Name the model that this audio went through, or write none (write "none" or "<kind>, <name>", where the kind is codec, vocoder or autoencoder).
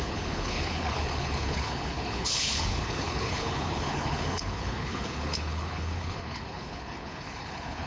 codec, HILCodec